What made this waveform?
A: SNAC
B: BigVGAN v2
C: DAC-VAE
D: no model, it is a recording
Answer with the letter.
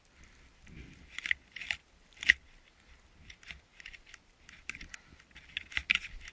D